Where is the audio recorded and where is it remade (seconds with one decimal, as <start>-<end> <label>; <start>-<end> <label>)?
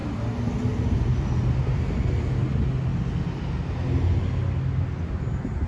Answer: 0.0-5.7 recorded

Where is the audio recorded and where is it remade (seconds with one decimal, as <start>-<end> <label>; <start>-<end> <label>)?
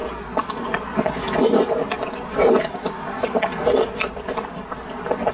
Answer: 0.0-2.6 recorded; 2.6-3.5 remade; 3.5-5.3 recorded